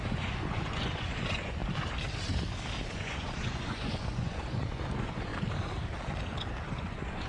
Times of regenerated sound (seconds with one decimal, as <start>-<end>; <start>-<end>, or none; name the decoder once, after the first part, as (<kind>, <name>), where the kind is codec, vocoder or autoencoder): 0.0-1.6 (vocoder, Vocos); 2.9-5.3; 6.8-7.3